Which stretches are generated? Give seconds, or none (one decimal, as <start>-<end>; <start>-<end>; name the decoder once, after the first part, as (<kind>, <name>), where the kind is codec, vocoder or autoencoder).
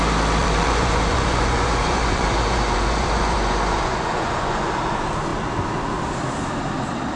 0.4-4.7 (vocoder, Vocos)